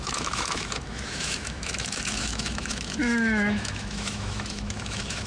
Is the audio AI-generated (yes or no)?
yes